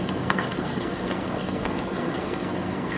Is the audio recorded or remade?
remade